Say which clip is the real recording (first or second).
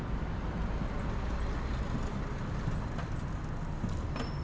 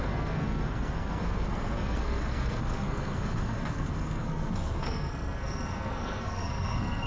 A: first